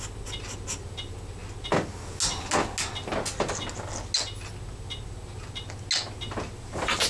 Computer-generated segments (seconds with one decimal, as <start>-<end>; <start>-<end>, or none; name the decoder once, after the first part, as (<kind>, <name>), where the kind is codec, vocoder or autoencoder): none